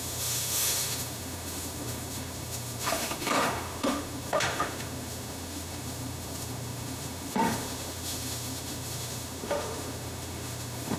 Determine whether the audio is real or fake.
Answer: fake